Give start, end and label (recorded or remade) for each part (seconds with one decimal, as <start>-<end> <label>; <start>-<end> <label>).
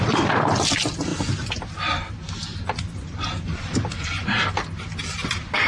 0.0-5.7 remade